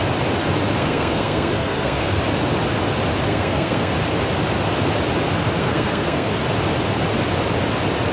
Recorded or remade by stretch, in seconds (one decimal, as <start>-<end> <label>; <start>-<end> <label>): 0.0-0.8 recorded; 0.8-2.2 remade; 2.2-3.3 recorded; 3.3-3.9 remade; 3.9-5.6 recorded; 5.6-6.3 remade; 6.3-8.1 recorded